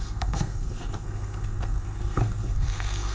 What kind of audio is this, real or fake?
fake